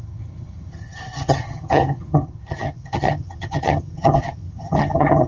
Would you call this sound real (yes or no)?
no